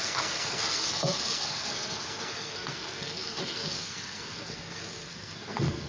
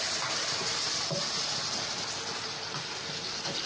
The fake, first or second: first